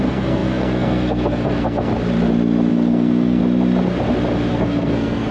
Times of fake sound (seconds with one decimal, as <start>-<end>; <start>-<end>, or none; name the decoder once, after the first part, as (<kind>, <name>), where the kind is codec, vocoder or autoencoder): 0.0-1.9 (codec, SNAC); 2.7-3.4; 4.5-5.3